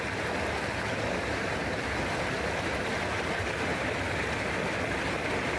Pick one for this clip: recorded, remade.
recorded